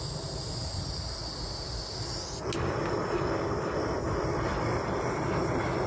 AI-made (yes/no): no